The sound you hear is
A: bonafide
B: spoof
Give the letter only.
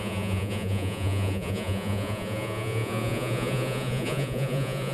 B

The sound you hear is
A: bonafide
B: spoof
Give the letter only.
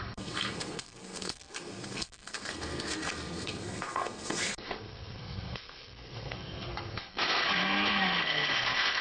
B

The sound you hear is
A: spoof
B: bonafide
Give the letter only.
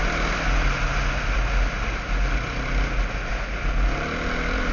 B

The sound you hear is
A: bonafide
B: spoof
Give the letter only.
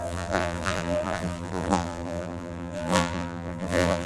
B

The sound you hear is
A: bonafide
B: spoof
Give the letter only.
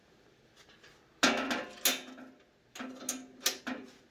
A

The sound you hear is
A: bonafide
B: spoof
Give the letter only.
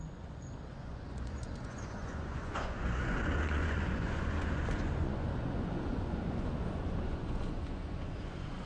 B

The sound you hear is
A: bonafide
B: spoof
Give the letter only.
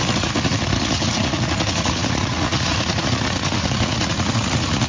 B